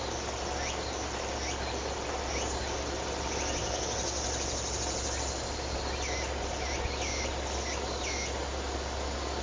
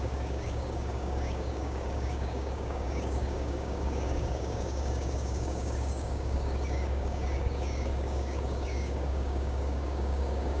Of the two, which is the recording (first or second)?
first